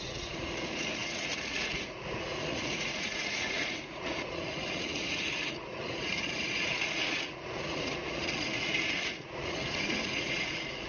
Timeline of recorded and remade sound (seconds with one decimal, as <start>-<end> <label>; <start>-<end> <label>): 0.0-10.9 remade